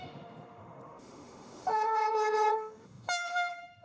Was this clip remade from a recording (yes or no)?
yes